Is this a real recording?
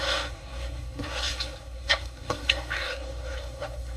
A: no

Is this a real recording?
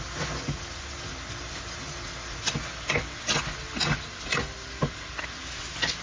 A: yes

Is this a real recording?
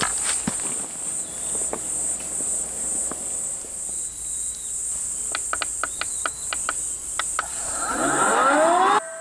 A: yes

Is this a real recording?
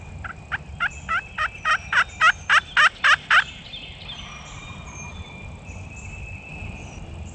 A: yes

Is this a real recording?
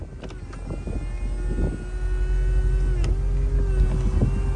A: yes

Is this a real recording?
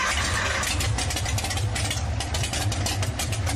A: yes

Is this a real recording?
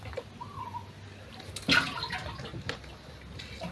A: yes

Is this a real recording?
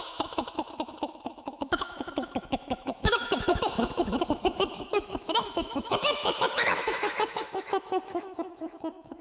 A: no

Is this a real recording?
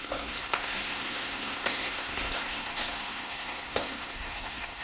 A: no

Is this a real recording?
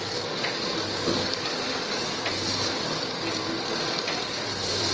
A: no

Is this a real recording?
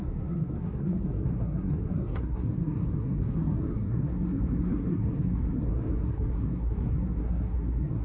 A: no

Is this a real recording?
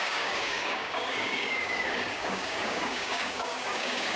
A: no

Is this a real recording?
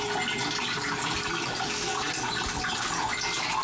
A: yes